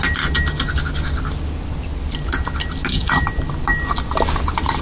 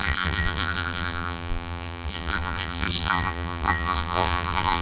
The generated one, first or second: second